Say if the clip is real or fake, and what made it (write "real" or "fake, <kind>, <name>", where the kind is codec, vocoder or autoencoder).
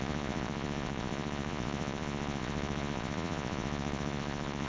fake, vocoder, Vocos